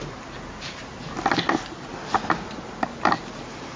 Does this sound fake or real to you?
real